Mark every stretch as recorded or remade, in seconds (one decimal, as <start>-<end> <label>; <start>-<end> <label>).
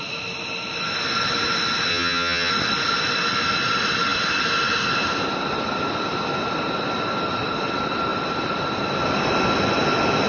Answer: 0.0-1.9 recorded; 1.9-2.5 remade; 2.5-10.3 recorded